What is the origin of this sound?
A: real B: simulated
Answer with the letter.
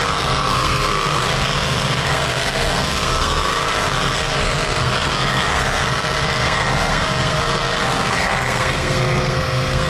B